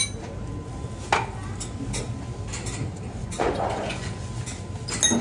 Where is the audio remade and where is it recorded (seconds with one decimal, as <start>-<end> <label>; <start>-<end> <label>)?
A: 0.0-3.2 recorded; 3.2-4.3 remade; 4.3-5.2 recorded